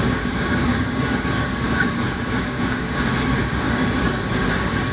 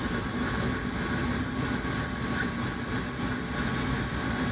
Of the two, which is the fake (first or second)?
first